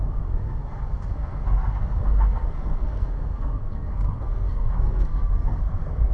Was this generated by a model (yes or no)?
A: yes